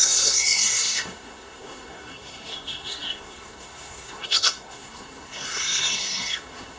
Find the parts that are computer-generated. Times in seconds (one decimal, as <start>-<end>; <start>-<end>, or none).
0.0-6.8